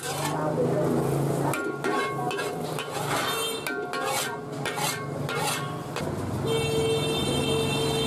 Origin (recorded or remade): recorded